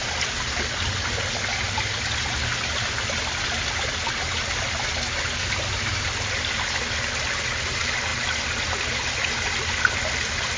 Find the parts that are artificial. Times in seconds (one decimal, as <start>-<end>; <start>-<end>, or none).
none